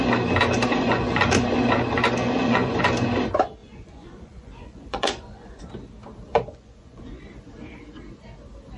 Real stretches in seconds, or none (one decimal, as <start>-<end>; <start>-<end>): 0.0-0.7; 1.3-2.2; 2.8-3.6; 5.6-6.3; 7.2-8.8